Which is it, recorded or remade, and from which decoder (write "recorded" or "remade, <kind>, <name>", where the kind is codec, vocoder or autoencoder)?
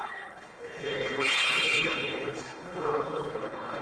remade, codec, HILCodec